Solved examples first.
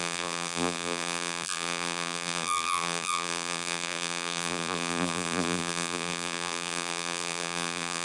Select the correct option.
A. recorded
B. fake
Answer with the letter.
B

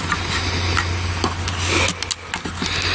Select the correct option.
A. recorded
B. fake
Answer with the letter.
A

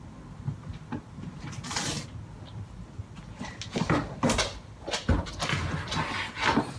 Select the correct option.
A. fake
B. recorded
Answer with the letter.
B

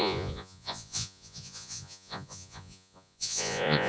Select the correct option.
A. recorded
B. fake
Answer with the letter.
B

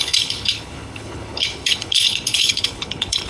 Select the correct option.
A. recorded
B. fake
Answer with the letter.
B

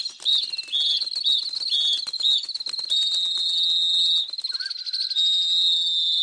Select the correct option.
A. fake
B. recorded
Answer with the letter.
B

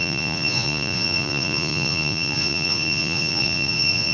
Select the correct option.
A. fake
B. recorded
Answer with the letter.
A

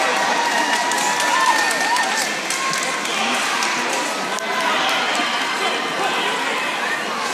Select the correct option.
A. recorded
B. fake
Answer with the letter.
A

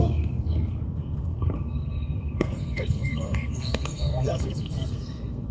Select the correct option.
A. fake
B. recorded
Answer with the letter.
A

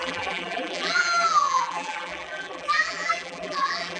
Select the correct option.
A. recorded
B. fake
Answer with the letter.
B